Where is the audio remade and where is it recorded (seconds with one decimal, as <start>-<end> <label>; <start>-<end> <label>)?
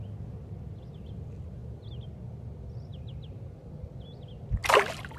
0.0-5.2 recorded